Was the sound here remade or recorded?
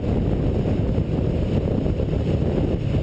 recorded